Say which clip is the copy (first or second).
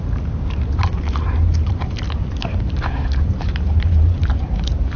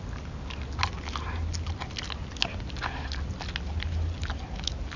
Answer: first